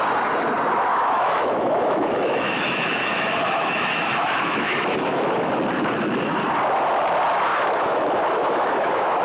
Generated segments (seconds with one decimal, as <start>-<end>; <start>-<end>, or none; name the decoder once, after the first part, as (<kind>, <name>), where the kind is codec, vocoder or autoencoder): 0.9-5.5 (autoencoder, DAC-VAE); 7.5-9.2